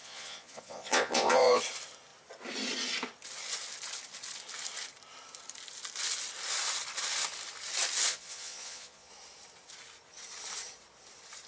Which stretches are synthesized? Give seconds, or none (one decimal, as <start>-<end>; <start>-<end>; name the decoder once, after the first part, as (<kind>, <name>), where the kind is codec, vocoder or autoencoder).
0.0-1.6 (vocoder, Vocos); 8.1-9.1